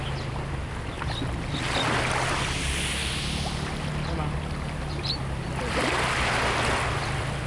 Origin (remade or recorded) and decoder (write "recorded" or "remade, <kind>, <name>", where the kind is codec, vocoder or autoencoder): recorded